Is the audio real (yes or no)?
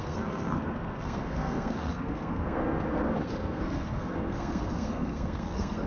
no